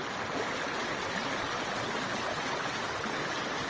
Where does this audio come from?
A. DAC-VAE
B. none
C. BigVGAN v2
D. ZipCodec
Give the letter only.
B